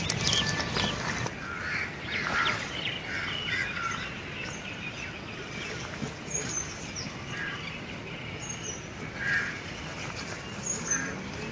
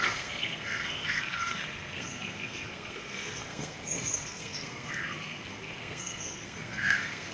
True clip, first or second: first